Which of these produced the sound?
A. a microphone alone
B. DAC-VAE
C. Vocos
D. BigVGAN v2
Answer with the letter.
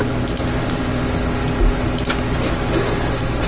A